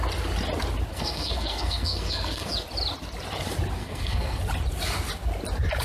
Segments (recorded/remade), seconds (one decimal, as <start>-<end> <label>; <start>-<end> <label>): 0.0-0.9 recorded; 0.9-2.5 remade; 2.5-3.8 recorded; 3.8-4.4 remade; 4.4-5.8 recorded